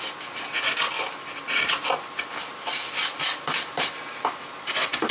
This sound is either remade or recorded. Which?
recorded